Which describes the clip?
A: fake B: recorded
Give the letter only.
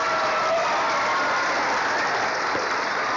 B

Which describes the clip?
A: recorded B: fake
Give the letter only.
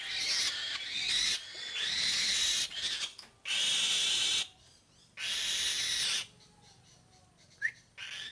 A